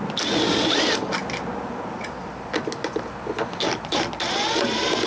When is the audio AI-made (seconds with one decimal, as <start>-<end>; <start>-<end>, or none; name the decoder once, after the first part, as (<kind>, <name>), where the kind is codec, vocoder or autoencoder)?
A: none